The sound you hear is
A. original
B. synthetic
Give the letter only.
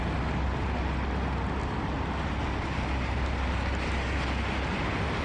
A